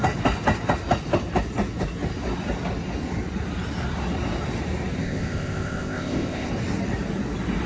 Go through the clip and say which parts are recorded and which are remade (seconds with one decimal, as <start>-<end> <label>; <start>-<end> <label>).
0.0-5.0 recorded; 5.0-6.5 remade; 6.5-7.7 recorded